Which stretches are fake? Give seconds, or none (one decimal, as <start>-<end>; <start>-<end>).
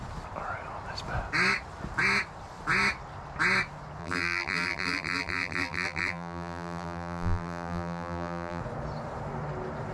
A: 4.0-8.6